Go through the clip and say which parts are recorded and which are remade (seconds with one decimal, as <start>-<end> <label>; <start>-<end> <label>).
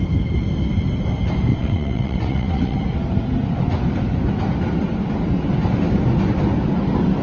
0.0-1.5 recorded; 1.5-2.8 remade; 2.8-7.2 recorded